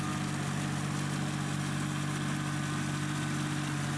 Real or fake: real